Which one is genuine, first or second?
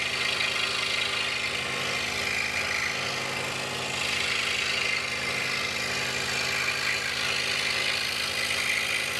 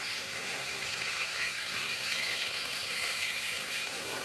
first